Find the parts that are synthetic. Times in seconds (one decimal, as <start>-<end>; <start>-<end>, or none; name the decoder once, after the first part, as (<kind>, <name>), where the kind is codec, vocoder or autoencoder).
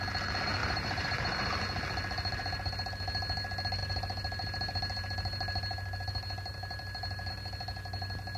0.6-1.6 (vocoder, BigVGAN v2)